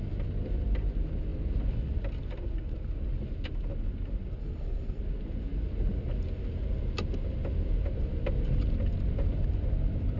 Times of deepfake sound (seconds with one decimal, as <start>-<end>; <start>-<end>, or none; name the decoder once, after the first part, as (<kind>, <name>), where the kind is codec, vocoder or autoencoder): 4.4-5.0 (codec, SNAC)